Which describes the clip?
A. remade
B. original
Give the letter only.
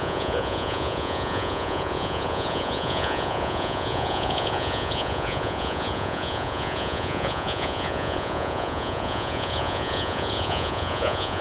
A